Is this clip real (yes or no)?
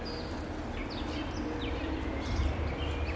yes